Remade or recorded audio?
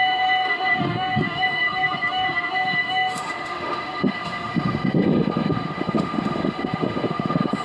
remade